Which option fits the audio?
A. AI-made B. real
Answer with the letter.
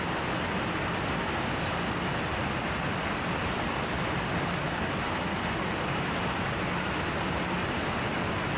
B